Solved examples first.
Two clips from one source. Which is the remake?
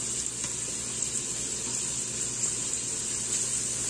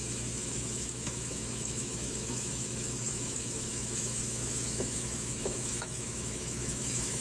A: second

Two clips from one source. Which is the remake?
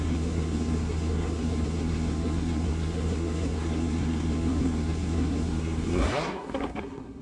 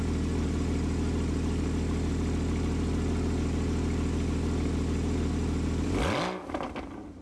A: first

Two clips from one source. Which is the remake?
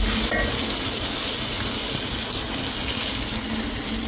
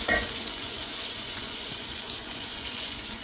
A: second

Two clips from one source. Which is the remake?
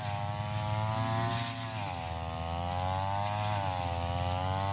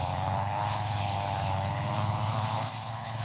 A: second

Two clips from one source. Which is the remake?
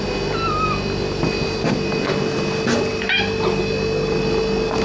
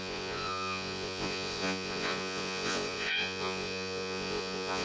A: second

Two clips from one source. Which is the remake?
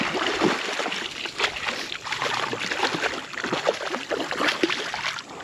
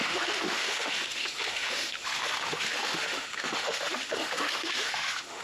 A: second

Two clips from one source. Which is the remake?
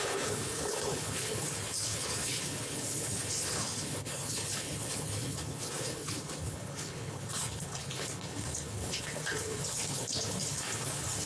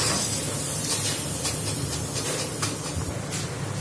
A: first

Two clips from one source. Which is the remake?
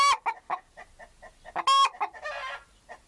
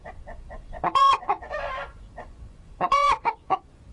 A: second